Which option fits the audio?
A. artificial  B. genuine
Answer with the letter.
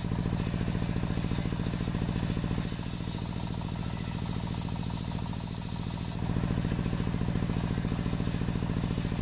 B